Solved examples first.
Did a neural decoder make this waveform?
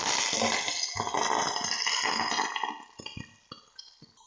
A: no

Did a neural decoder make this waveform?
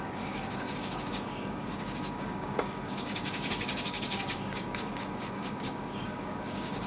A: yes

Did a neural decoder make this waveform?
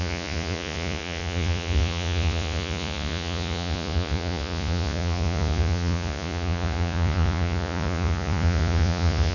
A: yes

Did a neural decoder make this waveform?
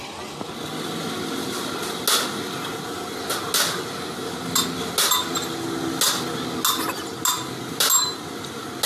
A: no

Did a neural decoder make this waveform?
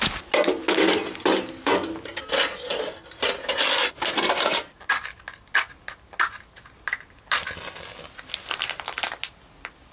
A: no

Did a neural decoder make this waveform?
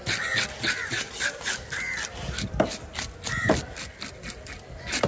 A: no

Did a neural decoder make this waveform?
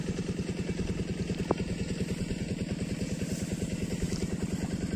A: no